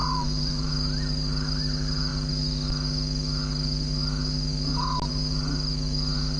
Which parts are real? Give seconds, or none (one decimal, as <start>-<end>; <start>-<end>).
0.7-6.4